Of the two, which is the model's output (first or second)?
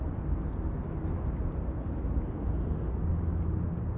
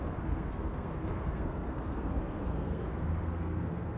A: second